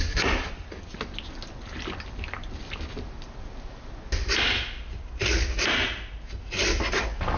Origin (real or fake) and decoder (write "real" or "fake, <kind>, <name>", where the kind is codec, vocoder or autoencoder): real